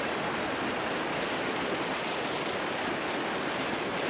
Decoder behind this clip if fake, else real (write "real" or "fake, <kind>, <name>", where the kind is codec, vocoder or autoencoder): real